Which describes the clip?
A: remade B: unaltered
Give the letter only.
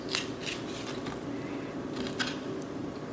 B